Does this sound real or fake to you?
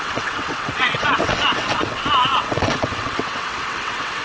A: fake